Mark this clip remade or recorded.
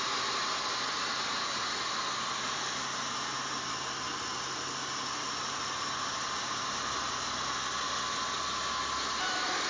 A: recorded